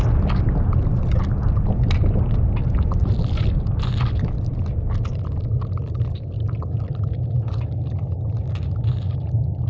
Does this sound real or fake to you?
real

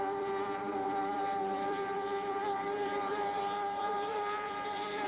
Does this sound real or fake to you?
fake